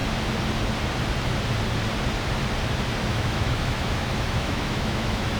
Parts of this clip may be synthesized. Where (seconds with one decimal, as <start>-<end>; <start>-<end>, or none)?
3.1-5.4